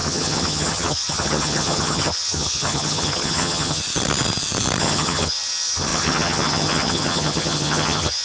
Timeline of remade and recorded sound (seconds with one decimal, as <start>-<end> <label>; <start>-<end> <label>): 0.0-3.8 remade; 3.8-4.8 recorded; 4.8-8.2 remade